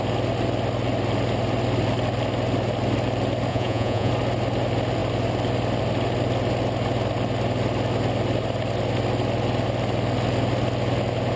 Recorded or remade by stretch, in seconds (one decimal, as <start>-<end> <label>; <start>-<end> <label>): 0.0-3.5 recorded; 3.5-4.1 remade; 4.1-11.4 recorded